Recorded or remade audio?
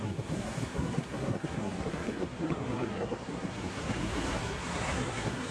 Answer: remade